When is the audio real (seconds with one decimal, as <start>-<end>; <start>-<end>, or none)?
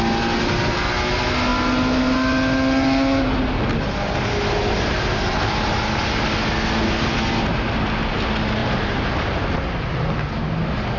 0.0-8.6; 9.4-11.0